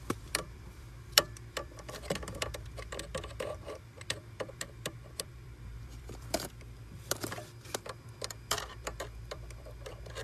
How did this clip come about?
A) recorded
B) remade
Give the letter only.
B